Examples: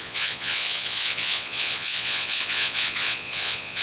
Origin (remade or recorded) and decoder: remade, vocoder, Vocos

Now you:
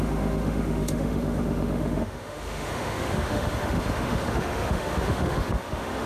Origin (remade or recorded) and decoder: remade, autoencoder, DAC-VAE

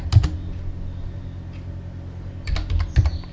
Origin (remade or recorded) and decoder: recorded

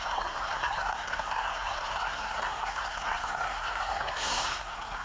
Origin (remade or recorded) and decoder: remade, codec, SNAC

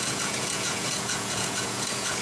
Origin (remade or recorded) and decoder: remade, vocoder, Vocos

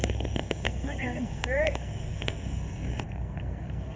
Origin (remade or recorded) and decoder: remade, codec, SNAC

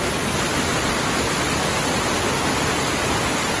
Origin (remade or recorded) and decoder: recorded